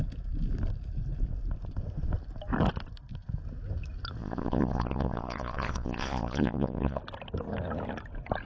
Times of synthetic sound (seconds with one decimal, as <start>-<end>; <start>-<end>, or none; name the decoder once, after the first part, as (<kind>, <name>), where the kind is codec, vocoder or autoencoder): 4.2-7.0 (vocoder, Vocos)

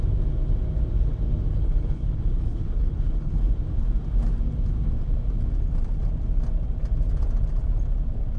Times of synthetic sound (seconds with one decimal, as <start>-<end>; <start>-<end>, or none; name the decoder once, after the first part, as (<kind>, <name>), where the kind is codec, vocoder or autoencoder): 1.5-3.5 (codec, HILCodec)

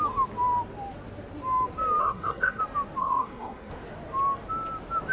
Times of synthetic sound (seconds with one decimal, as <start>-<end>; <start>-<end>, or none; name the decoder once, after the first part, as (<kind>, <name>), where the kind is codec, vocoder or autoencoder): 2.0-2.6 (codec, SNAC); 3.0-3.7

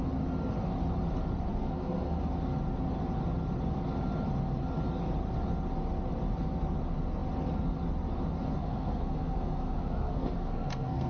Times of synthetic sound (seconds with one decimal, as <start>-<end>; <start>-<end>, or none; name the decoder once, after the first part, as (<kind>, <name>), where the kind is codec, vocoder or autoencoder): 1.5-2.2 (codec, SNAC); 8.6-11.1

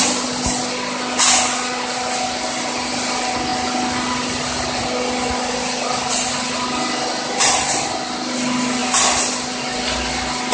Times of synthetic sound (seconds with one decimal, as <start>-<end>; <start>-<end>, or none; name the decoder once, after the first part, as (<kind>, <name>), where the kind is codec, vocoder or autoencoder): none

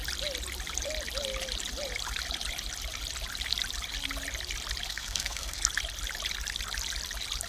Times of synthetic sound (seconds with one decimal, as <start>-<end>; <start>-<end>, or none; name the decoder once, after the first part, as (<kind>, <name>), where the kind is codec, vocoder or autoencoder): 4.9-5.6 (codec, SNAC)

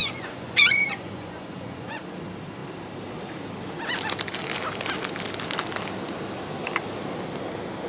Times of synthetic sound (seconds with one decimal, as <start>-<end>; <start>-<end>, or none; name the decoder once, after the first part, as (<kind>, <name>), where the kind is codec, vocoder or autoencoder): 0.0-2.0 (vocoder, Vocos)